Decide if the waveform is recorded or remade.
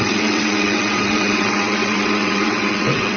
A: remade